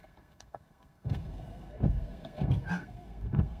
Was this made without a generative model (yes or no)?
no